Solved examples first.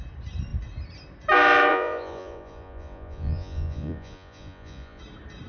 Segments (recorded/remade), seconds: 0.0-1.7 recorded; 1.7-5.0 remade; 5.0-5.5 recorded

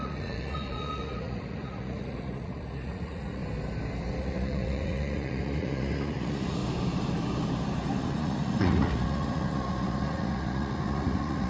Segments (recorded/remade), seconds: 0.0-3.4 remade; 3.4-4.2 recorded; 4.2-6.6 remade; 6.6-8.0 recorded; 8.0-11.5 remade

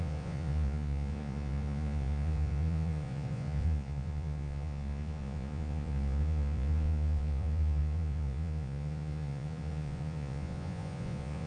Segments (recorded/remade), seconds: 0.0-11.5 remade

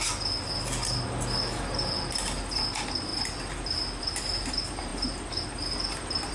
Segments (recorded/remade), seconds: 0.0-6.3 recorded

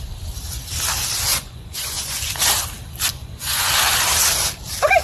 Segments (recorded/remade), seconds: 0.0-1.3 recorded; 1.3-2.3 remade; 2.3-3.1 recorded; 3.1-3.7 remade; 3.7-5.0 recorded

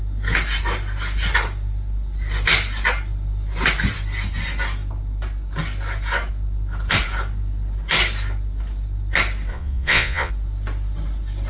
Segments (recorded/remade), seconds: 0.0-9.5 recorded; 9.5-10.3 remade; 10.3-11.5 recorded

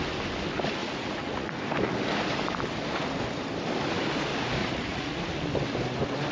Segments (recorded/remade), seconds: 0.0-0.8 recorded; 0.8-1.6 remade; 1.6-4.6 recorded; 4.6-5.2 remade; 5.2-6.3 recorded

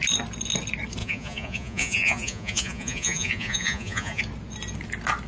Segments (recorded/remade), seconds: 0.0-1.0 recorded; 1.0-4.2 remade; 4.2-5.3 recorded